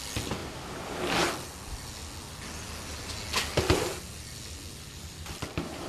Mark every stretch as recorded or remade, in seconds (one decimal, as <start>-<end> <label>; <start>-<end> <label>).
0.0-5.9 recorded